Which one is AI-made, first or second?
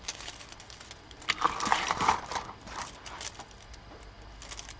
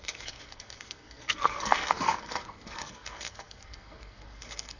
second